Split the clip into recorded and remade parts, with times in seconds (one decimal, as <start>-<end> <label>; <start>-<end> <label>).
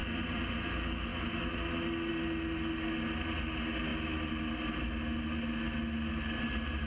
0.0-6.9 recorded